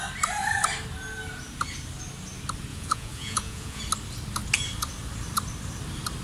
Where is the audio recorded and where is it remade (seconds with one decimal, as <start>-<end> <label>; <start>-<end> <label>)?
0.0-2.7 recorded; 2.7-3.8 remade; 3.8-6.2 recorded